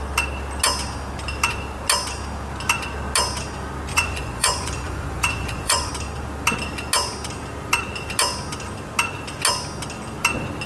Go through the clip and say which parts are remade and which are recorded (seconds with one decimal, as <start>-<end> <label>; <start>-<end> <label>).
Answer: 0.0-3.9 recorded; 3.9-5.9 remade; 5.9-10.7 recorded